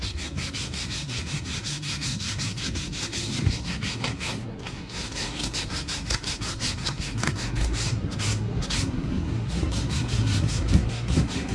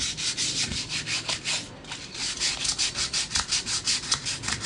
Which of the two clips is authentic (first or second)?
second